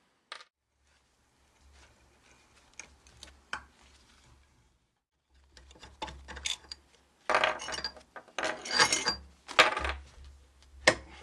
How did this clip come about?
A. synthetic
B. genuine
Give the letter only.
B